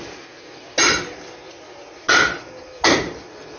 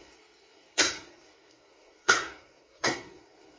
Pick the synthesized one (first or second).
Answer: second